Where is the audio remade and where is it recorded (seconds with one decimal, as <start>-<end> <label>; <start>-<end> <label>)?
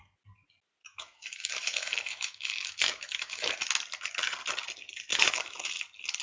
0.0-0.8 recorded; 0.8-3.5 remade; 3.5-5.1 recorded; 5.1-5.7 remade; 5.7-6.2 recorded